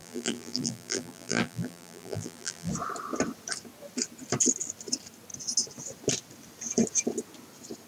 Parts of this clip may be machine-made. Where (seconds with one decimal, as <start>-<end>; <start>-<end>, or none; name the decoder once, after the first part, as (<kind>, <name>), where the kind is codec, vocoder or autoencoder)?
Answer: 0.0-2.7 (vocoder, BigVGAN v2)